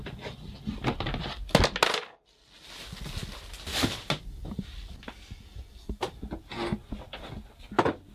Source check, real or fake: real